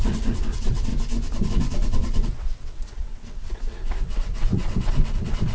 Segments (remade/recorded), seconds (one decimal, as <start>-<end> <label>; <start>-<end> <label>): 0.0-0.9 remade; 0.9-1.5 recorded; 1.5-5.5 remade